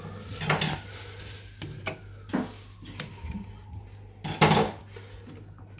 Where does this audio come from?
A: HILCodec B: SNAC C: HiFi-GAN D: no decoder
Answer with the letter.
D